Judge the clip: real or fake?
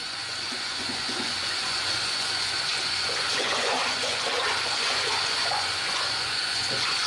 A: fake